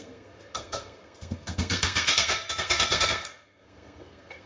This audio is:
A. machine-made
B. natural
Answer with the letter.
A